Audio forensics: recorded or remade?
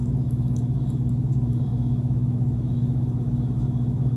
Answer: remade